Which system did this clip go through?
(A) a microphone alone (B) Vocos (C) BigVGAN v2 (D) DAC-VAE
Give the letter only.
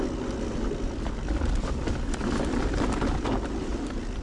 A